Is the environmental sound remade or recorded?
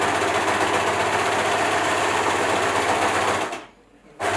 recorded